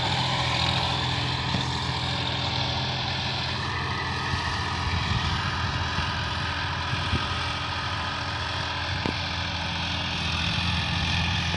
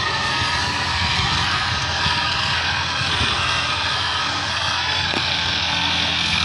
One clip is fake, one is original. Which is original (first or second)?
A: first